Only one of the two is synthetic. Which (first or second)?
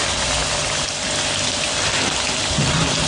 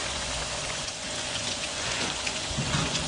second